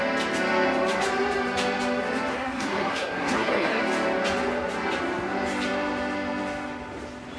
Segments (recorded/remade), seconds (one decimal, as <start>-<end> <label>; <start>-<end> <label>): 0.0-2.3 recorded; 2.3-3.8 remade; 3.8-7.4 recorded